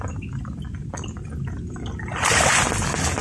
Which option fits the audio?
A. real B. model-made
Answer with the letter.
A